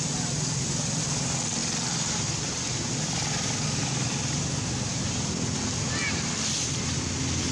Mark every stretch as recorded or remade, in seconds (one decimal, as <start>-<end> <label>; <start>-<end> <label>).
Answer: 0.0-7.5 recorded